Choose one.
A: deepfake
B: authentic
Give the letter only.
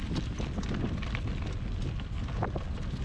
B